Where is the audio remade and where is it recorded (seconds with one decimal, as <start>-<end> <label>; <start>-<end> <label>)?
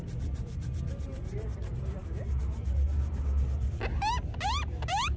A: 0.0-5.2 recorded